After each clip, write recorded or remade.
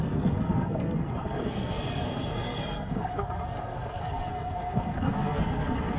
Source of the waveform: remade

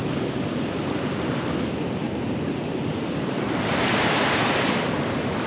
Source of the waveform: remade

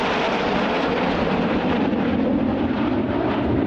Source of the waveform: recorded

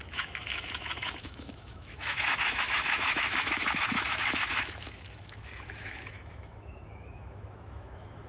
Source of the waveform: remade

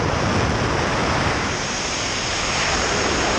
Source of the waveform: recorded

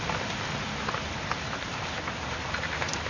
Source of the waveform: recorded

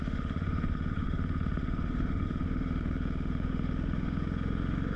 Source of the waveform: remade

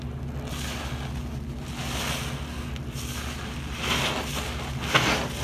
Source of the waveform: recorded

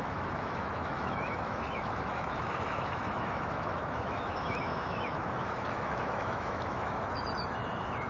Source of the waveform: remade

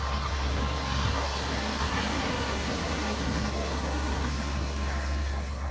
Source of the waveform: remade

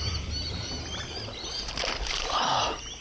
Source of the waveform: recorded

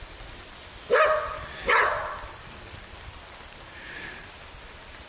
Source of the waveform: remade